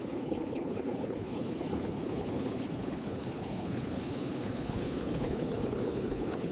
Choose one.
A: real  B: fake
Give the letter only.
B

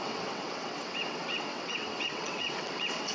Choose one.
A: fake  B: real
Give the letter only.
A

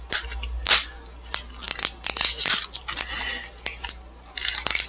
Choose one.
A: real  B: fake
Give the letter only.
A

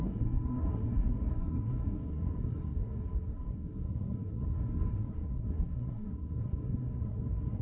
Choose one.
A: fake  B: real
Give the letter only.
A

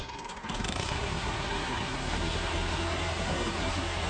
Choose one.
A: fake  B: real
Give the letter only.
A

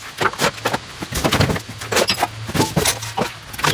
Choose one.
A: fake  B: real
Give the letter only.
B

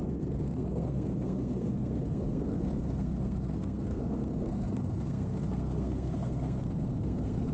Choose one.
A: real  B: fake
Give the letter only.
B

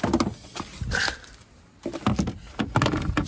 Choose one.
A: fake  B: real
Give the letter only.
B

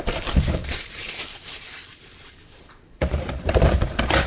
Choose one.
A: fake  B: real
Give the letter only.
A